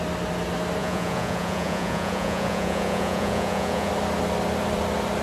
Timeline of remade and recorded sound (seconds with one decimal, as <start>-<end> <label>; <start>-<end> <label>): 0.0-0.8 recorded; 0.8-3.9 remade; 3.9-5.2 recorded